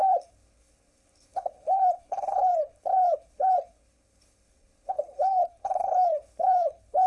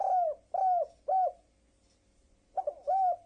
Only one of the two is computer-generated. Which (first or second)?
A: first